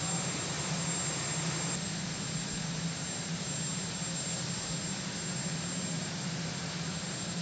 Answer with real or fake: real